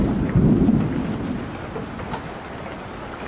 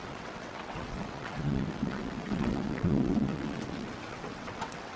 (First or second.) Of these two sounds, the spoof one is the second